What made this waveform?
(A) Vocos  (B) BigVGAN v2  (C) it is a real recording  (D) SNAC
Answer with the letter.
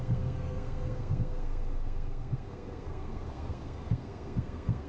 D